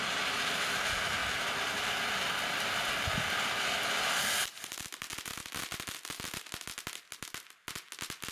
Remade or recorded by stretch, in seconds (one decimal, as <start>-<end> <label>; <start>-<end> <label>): 0.0-8.3 recorded